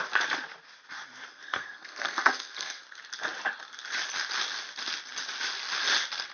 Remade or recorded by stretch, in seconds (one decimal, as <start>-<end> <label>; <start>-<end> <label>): 0.0-1.3 recorded; 1.3-2.8 remade; 2.8-6.3 recorded